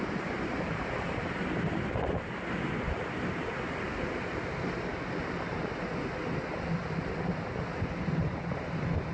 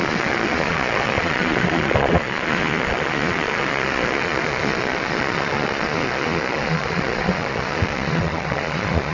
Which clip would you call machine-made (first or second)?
second